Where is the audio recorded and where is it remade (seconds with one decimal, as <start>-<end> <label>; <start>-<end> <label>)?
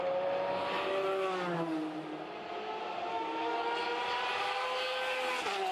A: 0.0-3.1 recorded; 3.1-3.8 remade; 3.8-5.7 recorded